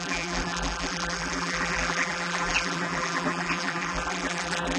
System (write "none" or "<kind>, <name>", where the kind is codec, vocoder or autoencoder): vocoder, BigVGAN v2